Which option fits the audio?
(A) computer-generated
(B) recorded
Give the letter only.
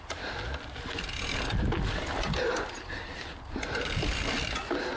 B